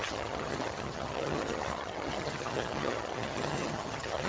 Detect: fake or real fake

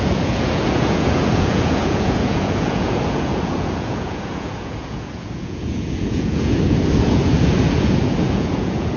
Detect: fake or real fake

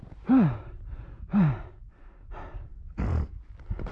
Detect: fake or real real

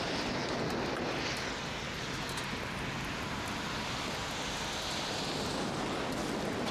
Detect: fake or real real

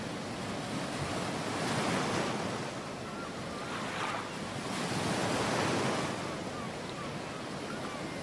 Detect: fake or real real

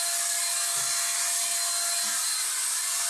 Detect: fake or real real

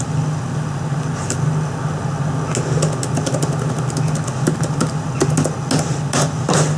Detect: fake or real real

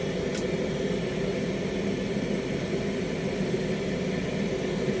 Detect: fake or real real